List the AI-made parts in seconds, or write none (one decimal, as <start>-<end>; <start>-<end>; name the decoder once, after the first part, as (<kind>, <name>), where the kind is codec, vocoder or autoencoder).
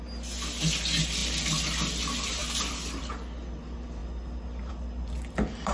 none